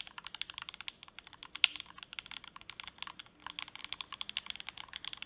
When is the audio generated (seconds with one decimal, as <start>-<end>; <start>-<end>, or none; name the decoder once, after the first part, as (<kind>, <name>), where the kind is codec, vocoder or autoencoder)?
none